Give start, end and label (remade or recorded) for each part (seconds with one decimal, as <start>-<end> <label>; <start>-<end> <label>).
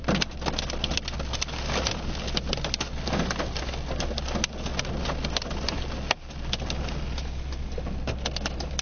0.0-8.8 recorded